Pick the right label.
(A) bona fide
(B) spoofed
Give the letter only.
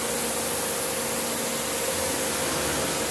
A